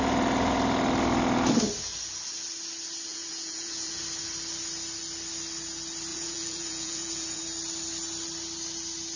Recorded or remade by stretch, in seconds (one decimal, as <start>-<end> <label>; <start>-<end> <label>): 0.0-3.1 recorded; 3.1-4.0 remade; 4.0-6.1 recorded; 6.1-7.4 remade; 7.4-9.2 recorded